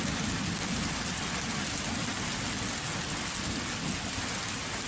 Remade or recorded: recorded